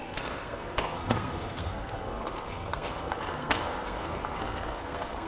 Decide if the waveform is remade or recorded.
remade